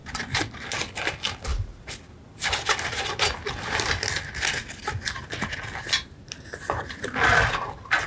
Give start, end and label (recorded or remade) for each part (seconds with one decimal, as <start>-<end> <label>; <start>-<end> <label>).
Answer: 0.0-8.1 recorded